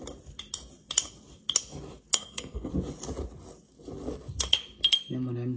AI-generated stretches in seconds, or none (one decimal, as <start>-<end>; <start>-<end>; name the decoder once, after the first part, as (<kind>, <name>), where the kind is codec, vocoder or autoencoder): 2.1-2.7 (codec, SNAC)